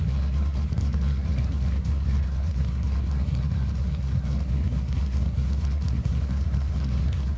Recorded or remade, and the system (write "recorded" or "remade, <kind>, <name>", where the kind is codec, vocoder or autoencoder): remade, codec, SNAC